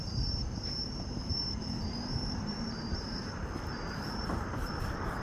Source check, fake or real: fake